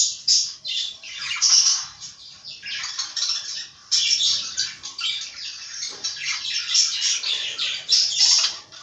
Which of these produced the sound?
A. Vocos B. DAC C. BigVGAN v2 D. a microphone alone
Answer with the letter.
C